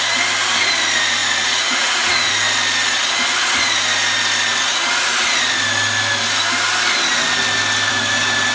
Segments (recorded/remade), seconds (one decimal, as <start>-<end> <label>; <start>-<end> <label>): 0.0-1.2 recorded; 1.2-2.3 remade; 2.3-8.5 recorded

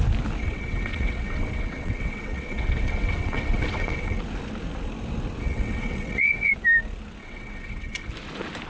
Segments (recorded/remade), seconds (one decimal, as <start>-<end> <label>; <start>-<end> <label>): 0.0-0.4 recorded; 0.4-4.2 remade; 4.2-5.4 recorded; 5.4-6.5 remade; 6.5-7.2 recorded; 7.2-8.1 remade; 8.1-8.7 recorded

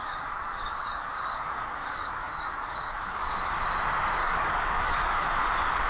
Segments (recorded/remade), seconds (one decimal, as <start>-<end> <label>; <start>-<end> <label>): 0.0-3.5 remade; 3.5-4.2 recorded; 4.2-5.4 remade; 5.4-5.9 recorded

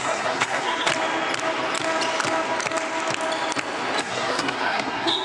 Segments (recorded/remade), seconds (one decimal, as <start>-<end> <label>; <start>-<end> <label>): 0.0-0.9 remade; 0.9-4.0 recorded; 4.0-5.2 remade

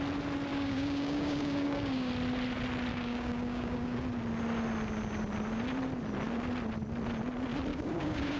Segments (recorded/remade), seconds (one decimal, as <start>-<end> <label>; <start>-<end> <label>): 0.0-0.5 recorded; 0.5-2.1 remade; 2.1-2.9 recorded; 2.9-4.0 remade; 4.0-7.7 recorded; 7.7-8.4 remade

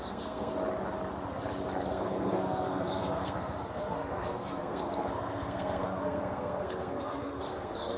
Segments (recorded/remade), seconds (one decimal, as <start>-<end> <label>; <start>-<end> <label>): 0.0-0.5 remade; 0.5-1.9 recorded; 1.9-8.0 remade